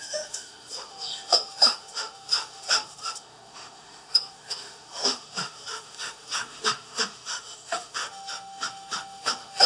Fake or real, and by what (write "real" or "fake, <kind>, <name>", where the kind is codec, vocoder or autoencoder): fake, autoencoder, DAC-VAE